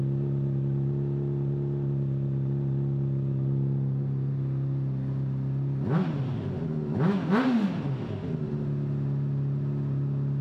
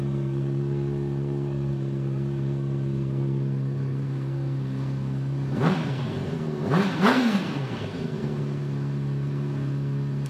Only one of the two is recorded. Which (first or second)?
first